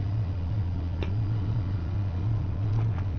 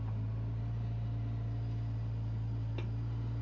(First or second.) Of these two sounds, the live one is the second